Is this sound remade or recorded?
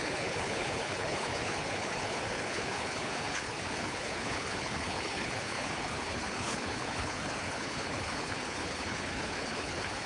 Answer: remade